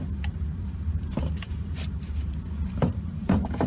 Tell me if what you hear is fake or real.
fake